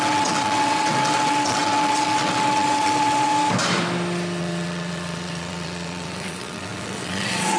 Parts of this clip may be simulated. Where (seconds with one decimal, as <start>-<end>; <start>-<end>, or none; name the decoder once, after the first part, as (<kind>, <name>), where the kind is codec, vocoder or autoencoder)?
0.0-3.3 (vocoder, WaveNeXt); 4.4-7.6